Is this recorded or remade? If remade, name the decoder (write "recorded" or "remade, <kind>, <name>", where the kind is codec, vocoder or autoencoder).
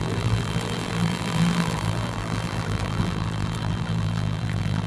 remade, vocoder, BigVGAN v2